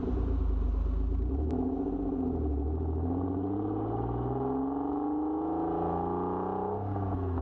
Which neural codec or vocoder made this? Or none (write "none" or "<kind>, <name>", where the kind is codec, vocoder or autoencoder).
none